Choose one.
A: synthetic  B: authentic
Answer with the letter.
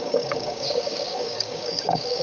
A